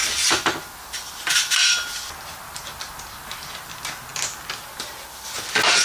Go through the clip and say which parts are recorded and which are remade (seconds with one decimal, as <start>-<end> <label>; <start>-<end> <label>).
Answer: 0.0-5.8 recorded